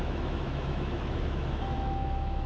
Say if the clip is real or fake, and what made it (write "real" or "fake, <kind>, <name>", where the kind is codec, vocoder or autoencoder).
fake, autoencoder, DAC-VAE